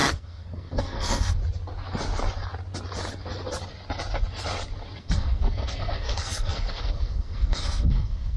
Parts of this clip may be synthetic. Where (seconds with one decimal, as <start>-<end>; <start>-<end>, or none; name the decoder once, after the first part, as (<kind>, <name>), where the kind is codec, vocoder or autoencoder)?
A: 0.0-1.4 (codec, SNAC); 5.0-8.4